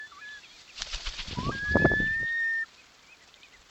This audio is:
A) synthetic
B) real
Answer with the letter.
B